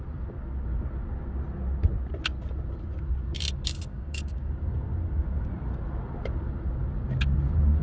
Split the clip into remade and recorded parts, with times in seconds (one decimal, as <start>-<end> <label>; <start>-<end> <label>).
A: 0.0-3.9 recorded; 3.9-4.5 remade; 4.5-7.8 recorded